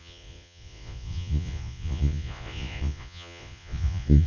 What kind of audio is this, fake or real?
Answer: fake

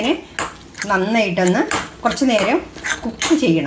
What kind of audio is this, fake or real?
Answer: real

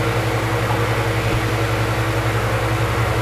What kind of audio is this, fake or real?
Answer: real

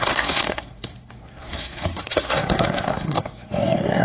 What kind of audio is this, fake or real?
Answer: fake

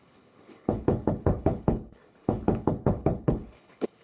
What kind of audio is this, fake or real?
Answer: fake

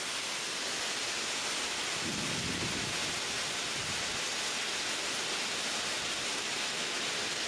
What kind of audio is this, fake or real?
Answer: real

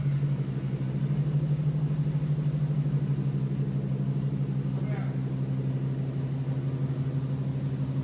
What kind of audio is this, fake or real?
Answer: real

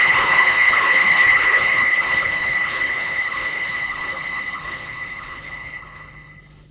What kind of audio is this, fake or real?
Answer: fake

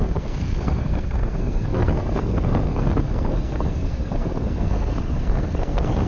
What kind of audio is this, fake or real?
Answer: fake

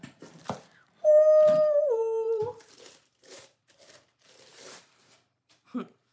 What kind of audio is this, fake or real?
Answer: fake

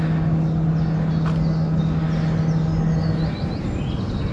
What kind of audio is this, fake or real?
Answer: real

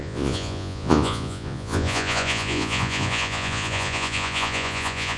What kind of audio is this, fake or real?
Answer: fake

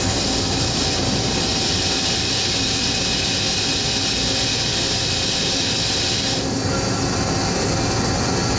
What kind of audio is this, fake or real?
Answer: real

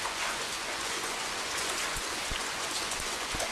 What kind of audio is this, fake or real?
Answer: fake